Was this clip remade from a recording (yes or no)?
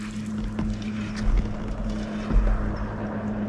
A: no